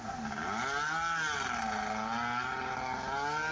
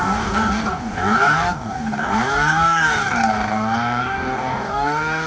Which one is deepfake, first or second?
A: second